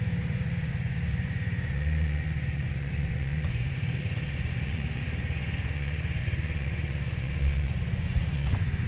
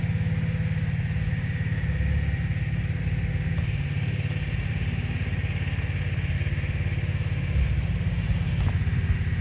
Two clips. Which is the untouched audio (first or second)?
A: second